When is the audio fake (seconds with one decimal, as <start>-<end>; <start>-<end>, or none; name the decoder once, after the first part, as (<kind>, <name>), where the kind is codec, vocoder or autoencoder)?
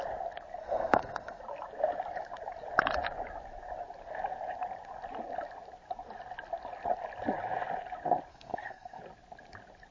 0.6-1.4 (codec, SNAC); 8.3-9.0